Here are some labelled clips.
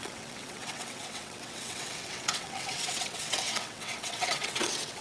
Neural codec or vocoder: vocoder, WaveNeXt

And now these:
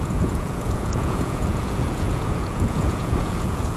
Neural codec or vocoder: vocoder, Vocos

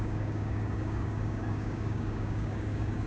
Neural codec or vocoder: codec, DAC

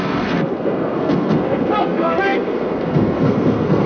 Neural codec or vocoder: codec, SNAC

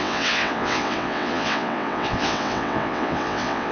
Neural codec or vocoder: vocoder, WaveNeXt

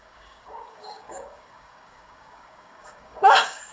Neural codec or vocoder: codec, DAC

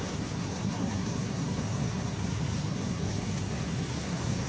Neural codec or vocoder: codec, SNAC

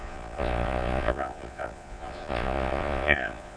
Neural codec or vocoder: vocoder, Vocos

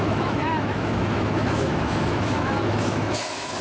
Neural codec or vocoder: autoencoder, DAC-VAE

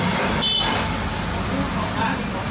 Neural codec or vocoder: none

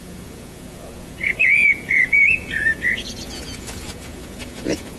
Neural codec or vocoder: vocoder, Vocos